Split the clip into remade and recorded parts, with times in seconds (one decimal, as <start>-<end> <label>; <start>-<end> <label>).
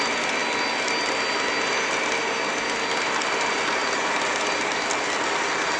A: 0.0-5.8 recorded